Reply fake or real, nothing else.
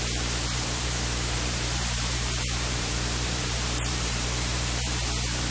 fake